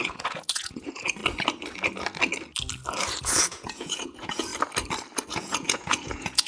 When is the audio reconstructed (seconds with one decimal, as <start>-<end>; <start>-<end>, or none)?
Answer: 0.0-1.2; 3.2-4.5; 5.3-6.5